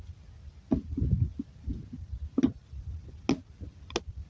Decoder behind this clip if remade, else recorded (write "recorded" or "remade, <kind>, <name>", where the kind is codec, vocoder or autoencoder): recorded